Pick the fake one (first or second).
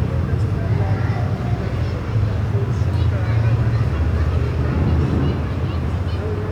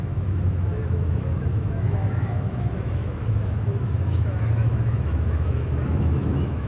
second